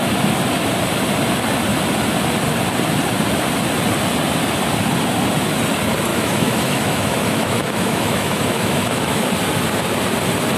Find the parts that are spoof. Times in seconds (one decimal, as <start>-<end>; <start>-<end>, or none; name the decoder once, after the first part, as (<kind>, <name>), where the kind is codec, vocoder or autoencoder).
6.1-9.3 (autoencoder, DAC-VAE)